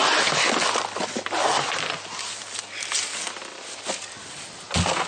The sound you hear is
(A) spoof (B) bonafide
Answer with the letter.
B